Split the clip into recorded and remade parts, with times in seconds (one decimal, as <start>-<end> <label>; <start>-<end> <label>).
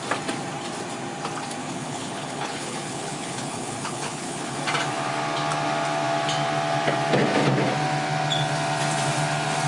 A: 0.0-1.6 recorded; 1.6-4.6 remade; 4.6-9.7 recorded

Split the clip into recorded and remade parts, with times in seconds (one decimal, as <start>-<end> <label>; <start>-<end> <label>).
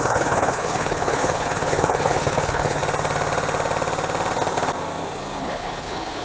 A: 0.0-2.8 remade; 2.8-5.4 recorded; 5.4-6.2 remade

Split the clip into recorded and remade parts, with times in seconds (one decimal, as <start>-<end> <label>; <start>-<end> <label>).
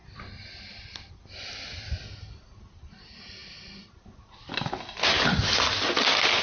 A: 0.0-6.4 recorded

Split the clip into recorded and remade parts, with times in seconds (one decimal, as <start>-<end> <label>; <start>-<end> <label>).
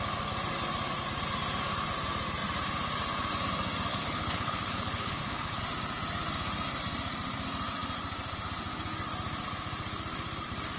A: 0.0-3.9 recorded; 3.9-5.6 remade; 5.6-10.8 recorded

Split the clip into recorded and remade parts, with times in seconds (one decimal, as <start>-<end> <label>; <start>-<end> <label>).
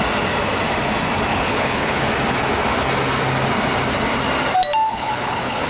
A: 0.0-1.3 recorded; 1.3-2.0 remade; 2.0-4.9 recorded; 4.9-5.7 remade